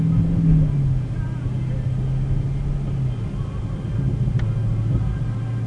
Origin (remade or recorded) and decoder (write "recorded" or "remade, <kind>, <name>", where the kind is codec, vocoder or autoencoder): recorded